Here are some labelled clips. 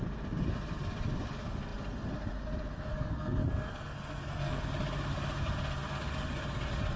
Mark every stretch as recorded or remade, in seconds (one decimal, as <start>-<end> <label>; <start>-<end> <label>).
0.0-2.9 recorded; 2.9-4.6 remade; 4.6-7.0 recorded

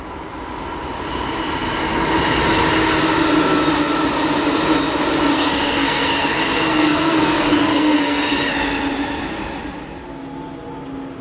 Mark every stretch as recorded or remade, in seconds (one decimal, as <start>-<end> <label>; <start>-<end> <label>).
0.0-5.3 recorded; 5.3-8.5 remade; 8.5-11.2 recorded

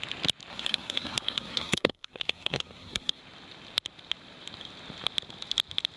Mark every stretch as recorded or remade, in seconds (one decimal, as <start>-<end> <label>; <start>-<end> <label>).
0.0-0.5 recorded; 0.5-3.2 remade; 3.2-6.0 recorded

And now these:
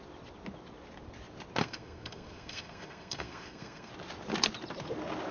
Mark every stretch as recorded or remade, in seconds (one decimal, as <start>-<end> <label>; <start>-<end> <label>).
0.0-1.6 recorded; 1.6-3.9 remade; 3.9-5.3 recorded